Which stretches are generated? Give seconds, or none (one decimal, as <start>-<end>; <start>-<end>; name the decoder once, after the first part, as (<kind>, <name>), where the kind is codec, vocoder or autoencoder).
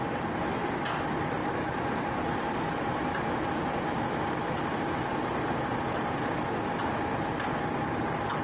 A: none